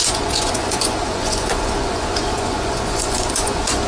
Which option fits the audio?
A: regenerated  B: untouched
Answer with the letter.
A